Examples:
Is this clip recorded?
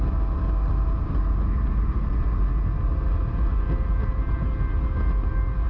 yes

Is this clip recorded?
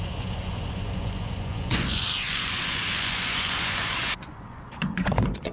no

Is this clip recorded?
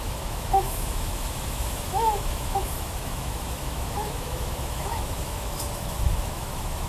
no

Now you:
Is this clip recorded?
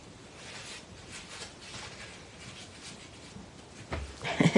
yes